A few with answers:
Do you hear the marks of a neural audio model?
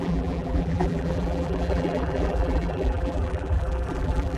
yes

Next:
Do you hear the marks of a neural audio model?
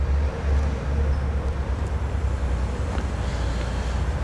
no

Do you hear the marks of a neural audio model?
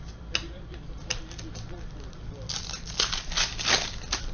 yes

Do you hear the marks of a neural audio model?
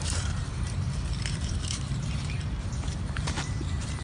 yes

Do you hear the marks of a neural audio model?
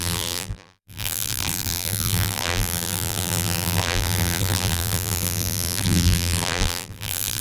yes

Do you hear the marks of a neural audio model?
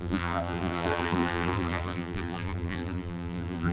yes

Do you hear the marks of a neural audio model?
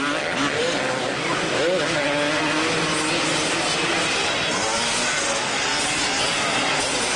no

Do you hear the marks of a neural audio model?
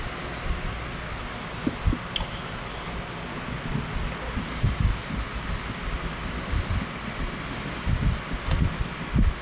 no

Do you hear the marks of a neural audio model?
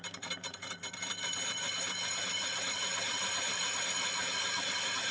yes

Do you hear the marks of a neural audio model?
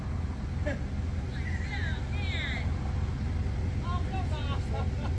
no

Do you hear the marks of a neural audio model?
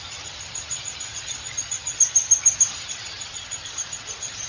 yes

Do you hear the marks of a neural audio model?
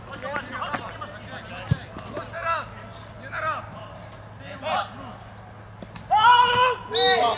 no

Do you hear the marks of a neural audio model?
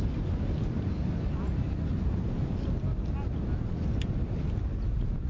no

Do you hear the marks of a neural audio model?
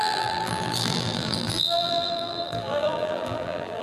yes